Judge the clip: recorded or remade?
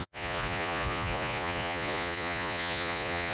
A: remade